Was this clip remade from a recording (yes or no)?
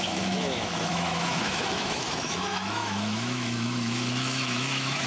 yes